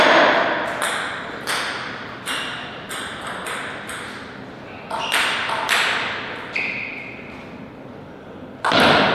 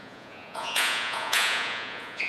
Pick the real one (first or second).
first